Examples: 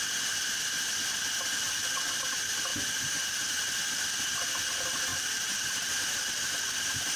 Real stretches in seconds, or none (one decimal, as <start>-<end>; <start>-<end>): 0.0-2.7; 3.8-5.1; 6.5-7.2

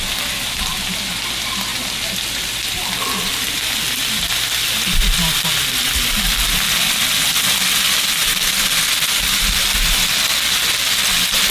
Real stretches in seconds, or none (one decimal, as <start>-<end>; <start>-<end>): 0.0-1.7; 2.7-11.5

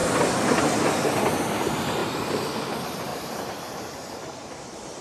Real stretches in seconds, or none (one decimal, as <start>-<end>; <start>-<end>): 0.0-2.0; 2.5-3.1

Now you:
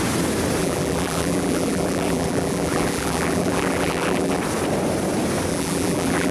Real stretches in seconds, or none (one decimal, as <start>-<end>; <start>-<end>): 0.0-0.6; 4.4-5.5